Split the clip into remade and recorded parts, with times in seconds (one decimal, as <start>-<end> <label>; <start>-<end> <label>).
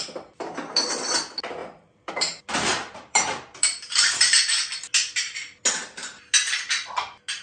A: 0.0-1.6 recorded; 1.6-2.1 remade; 2.1-2.7 recorded; 2.7-4.4 remade; 4.4-7.4 recorded